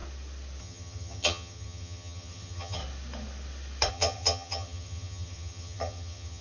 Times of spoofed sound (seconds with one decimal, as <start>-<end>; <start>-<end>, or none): 0.6-2.8; 3.9-6.4